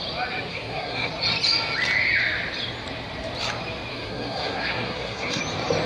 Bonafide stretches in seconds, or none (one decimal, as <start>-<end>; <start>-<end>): 0.0-0.5; 1.1-3.9; 5.4-5.9